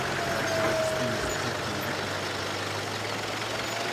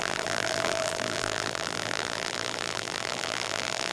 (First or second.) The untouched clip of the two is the first